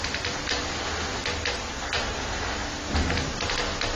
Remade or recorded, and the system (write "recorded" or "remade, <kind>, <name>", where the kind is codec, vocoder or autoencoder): recorded